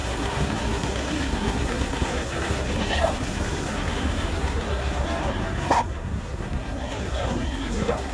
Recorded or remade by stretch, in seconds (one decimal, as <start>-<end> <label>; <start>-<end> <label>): 0.0-8.1 remade